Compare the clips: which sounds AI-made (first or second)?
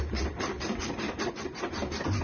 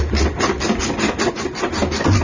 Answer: first